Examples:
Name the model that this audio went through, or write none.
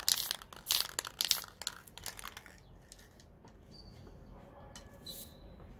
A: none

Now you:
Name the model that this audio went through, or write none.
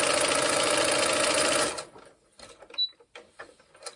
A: none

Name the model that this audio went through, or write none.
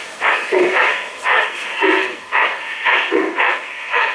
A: codec, SNAC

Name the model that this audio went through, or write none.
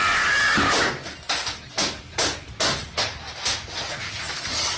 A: none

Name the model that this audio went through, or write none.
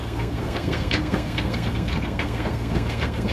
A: codec, SNAC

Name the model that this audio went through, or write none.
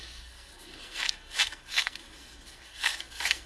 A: codec, SNAC